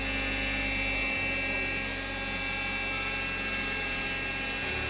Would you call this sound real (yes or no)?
yes